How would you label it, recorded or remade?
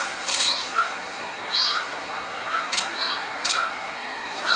remade